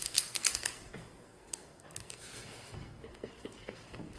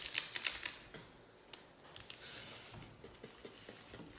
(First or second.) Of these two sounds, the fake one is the first